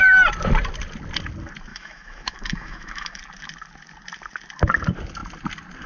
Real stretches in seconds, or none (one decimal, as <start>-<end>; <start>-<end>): 0.0-1.7; 3.2-5.9